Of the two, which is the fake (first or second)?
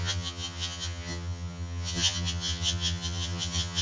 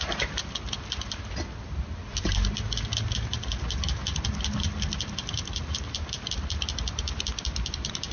first